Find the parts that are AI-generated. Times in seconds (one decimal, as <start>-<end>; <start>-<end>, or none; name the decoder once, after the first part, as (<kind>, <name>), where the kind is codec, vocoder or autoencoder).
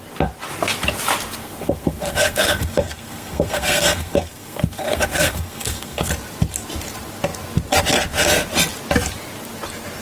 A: 1.4-6.1 (codec, SNAC)